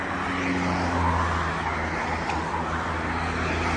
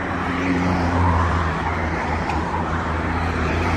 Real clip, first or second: first